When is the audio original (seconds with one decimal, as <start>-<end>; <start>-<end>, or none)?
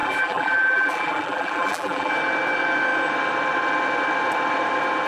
2.1-5.1